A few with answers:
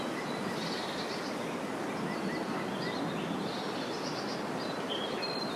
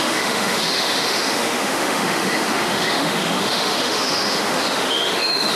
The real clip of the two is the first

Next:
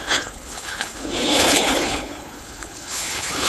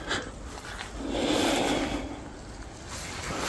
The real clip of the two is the second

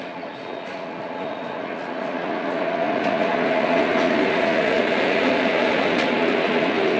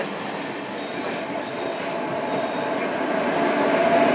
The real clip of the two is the second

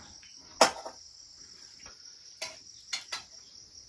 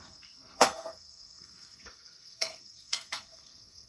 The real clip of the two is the first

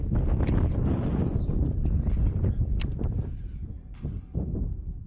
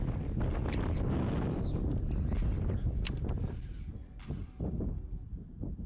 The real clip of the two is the second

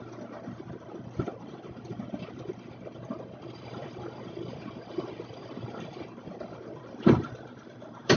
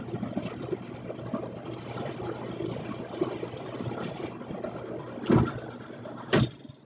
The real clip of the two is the second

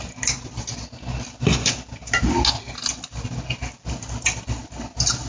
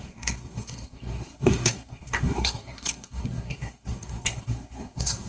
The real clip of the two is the first